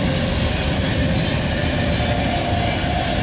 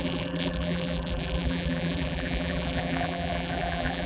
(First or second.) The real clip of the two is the first